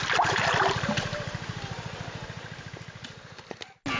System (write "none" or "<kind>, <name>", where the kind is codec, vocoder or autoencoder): none